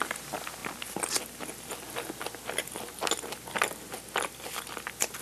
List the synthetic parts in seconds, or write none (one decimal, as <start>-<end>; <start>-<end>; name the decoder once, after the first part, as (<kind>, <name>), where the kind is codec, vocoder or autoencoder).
none